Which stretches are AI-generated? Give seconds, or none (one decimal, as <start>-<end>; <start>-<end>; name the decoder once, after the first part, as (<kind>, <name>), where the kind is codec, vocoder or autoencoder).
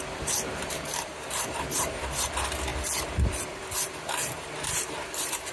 0.0-5.5 (vocoder, BigVGAN v2)